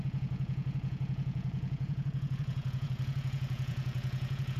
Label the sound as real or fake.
fake